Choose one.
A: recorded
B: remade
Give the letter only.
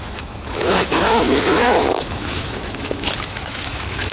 B